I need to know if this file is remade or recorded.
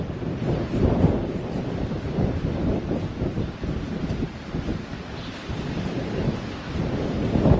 recorded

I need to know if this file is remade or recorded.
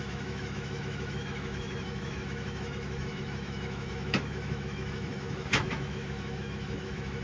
remade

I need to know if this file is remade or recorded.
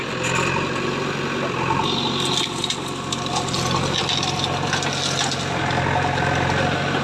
recorded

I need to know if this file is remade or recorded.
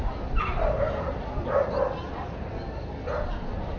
recorded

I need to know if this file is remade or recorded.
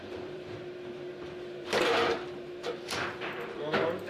remade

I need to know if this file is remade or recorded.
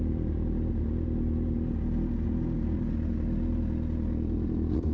recorded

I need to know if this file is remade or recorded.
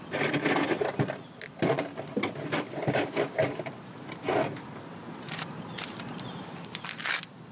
recorded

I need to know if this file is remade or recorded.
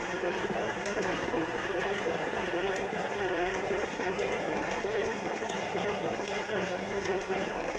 remade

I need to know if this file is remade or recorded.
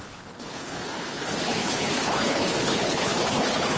remade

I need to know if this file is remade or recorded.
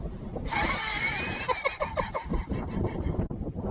recorded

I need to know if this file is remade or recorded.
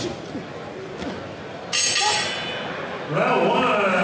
recorded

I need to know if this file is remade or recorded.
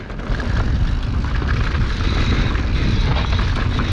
recorded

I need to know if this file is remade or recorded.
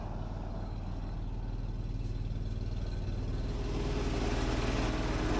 recorded